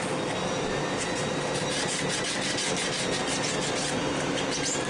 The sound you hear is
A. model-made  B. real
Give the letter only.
B